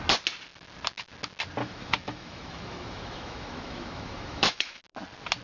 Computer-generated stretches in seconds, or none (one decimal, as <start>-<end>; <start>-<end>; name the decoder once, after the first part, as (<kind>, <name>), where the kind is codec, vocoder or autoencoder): 1.6-4.8 (autoencoder, DAC-VAE)